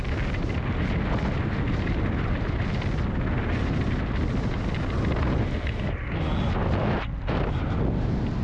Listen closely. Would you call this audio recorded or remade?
recorded